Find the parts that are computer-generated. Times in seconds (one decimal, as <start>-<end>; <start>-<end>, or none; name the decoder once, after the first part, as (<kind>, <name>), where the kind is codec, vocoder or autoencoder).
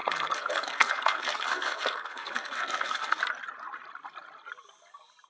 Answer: 0.0-3.2 (codec, SNAC)